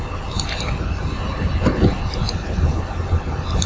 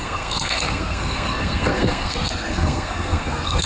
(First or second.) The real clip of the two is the first